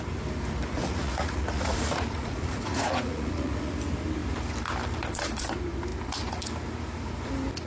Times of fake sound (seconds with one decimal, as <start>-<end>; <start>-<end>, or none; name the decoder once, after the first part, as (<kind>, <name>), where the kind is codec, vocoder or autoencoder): 0.7-3.7 (vocoder, Vocos)